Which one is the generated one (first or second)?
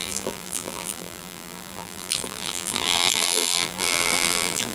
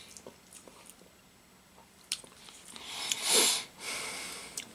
first